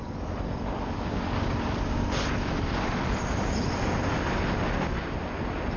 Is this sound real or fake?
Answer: real